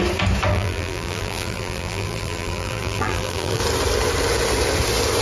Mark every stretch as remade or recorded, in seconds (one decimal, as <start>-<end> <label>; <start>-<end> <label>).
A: 0.0-0.5 recorded; 0.5-3.6 remade; 3.6-5.2 recorded